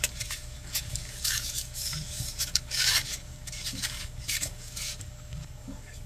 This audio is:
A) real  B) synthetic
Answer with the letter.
B